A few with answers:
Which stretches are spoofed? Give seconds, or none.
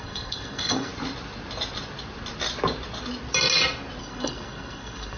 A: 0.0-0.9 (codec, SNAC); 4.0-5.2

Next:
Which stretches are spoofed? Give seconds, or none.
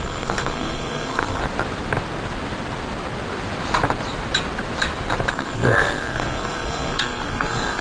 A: 0.0-1.4 (codec, SNAC); 5.3-7.8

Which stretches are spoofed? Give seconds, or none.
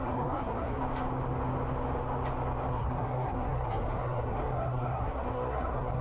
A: 0.0-0.8 (codec, SNAC); 2.7-6.0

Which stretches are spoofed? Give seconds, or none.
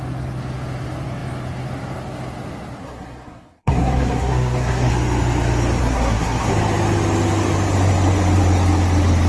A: 2.8-4.9 (codec, SNAC); 5.8-6.5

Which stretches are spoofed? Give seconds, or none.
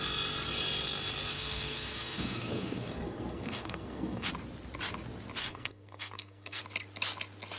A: 1.3-4.3 (codec, SNAC); 5.4-6.6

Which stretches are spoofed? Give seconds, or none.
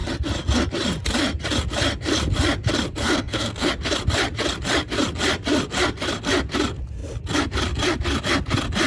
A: 3.0-3.7 (codec, SNAC)